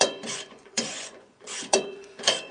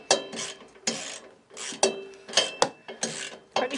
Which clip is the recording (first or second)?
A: second